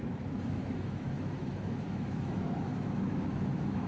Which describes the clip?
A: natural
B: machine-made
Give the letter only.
B